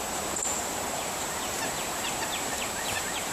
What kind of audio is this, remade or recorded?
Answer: remade